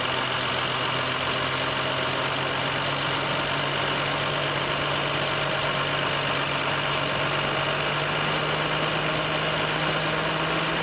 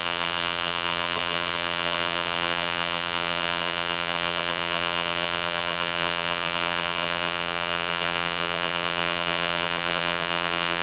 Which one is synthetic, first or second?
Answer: second